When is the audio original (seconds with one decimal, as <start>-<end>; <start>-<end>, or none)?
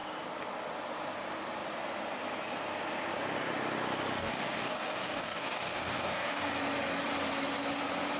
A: 0.0-4.2; 6.4-8.2